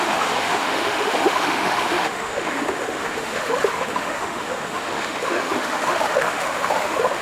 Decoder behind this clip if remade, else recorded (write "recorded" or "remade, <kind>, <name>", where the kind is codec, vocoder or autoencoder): remade, autoencoder, DAC-VAE